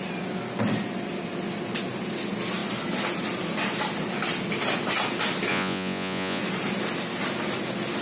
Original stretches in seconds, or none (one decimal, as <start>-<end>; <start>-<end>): 0.0-5.5; 6.4-8.0

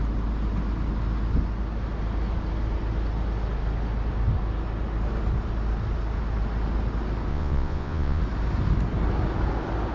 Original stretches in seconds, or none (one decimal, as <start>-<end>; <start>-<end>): 0.0-7.3; 8.2-9.9

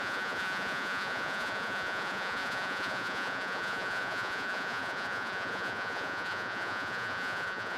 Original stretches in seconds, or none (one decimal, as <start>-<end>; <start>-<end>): none

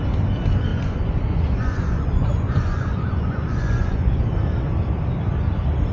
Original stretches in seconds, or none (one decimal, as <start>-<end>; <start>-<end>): 0.0-0.7; 4.2-5.9

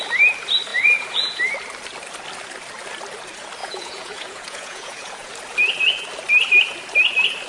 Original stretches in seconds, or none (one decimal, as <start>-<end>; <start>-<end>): 0.0-0.7; 1.4-3.6; 5.3-7.5